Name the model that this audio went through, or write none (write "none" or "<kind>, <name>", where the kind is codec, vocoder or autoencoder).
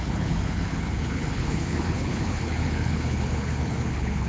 codec, HILCodec